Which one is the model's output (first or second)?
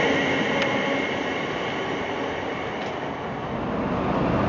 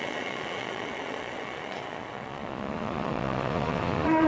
second